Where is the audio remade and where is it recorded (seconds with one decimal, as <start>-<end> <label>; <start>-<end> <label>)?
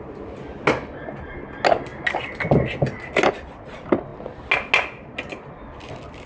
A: 0.0-6.3 recorded